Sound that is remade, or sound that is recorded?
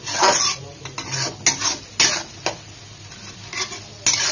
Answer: recorded